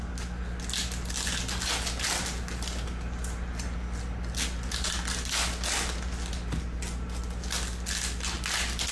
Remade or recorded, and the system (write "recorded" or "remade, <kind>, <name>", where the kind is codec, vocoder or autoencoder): recorded